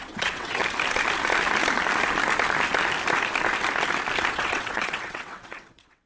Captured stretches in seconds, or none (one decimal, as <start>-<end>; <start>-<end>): 0.6-4.3